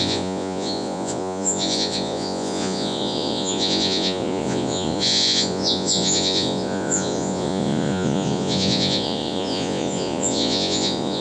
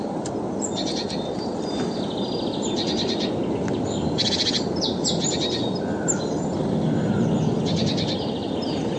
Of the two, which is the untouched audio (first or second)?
second